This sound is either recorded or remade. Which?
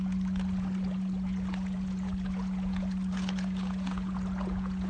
remade